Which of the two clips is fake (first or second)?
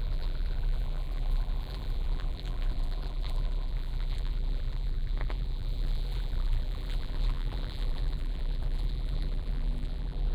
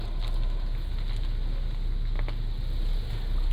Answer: first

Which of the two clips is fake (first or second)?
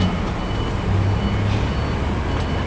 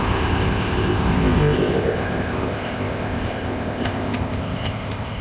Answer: second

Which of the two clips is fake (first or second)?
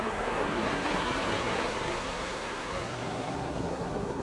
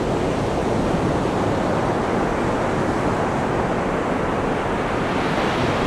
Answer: first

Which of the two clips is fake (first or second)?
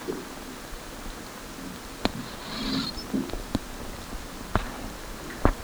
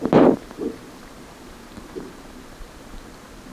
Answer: second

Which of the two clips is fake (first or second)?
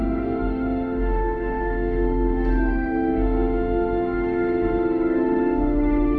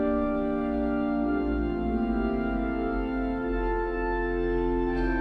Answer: first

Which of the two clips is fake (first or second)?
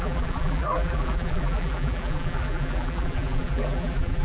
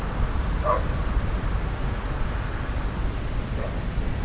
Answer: first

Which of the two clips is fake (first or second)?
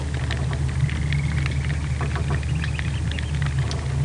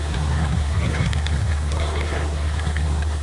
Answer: second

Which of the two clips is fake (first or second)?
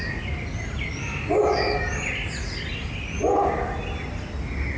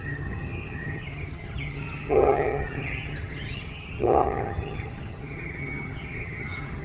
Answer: second